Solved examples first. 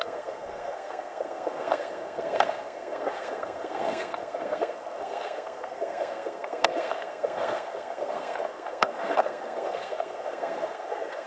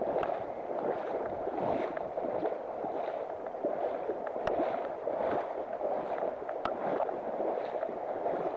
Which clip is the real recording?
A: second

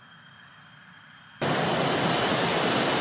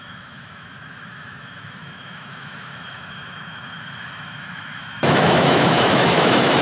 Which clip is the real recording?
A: first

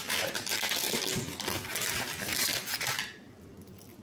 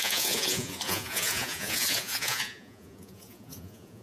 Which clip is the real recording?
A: first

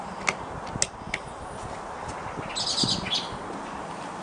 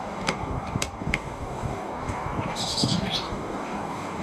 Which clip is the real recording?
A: first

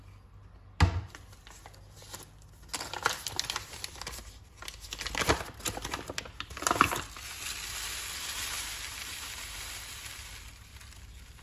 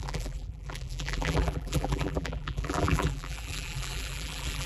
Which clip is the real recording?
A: first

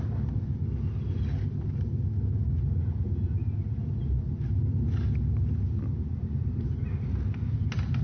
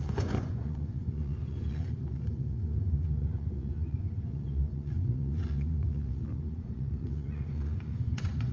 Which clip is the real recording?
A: first